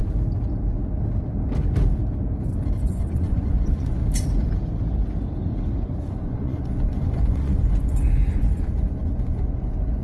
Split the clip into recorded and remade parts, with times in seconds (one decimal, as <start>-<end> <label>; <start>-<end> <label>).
0.0-2.8 recorded; 2.8-4.0 remade; 4.0-6.2 recorded; 6.2-10.0 remade